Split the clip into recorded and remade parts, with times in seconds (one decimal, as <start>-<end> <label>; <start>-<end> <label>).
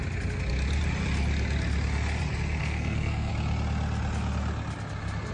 0.0-2.6 recorded; 2.6-3.3 remade; 3.3-5.3 recorded